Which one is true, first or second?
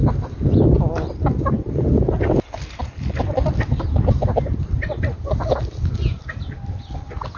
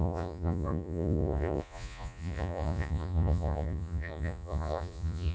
first